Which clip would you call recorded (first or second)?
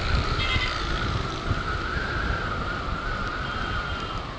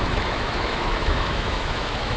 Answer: first